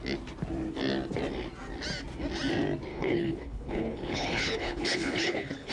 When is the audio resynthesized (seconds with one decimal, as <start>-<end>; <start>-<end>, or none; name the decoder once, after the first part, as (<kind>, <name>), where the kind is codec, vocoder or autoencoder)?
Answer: 2.9-5.7 (codec, HILCodec)